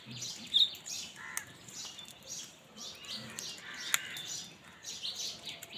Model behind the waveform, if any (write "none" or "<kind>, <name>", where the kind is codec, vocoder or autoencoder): none